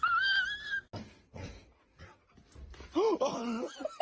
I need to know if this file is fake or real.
real